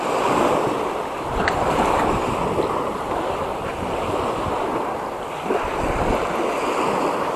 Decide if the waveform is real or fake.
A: real